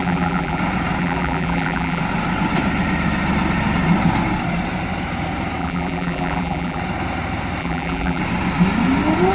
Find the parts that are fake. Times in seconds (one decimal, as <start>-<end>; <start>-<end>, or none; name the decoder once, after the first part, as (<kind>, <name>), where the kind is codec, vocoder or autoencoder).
0.0-0.6 (vocoder, BigVGAN v2); 1.0-2.0; 5.6-6.8; 7.6-8.2